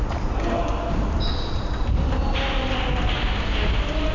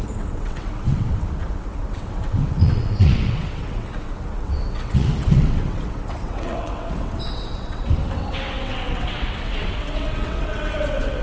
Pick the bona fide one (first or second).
first